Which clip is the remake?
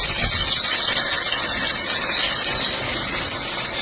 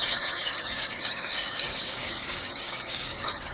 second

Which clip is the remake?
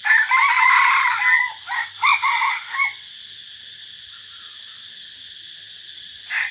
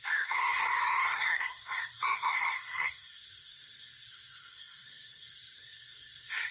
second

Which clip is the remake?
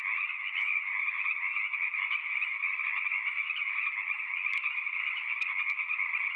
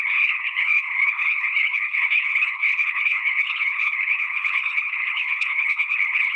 second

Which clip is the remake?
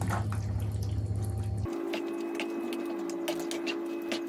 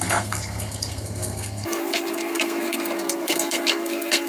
second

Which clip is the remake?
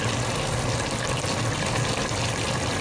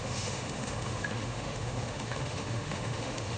second